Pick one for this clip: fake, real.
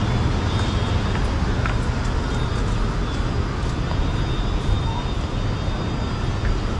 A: real